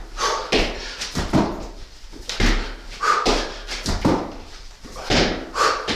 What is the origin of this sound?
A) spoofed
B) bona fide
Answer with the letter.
A